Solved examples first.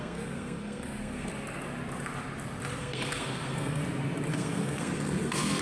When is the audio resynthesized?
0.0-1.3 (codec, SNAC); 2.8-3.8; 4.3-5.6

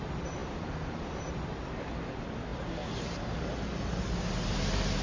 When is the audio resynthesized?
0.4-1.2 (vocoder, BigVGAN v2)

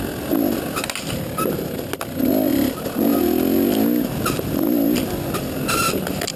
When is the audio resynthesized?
none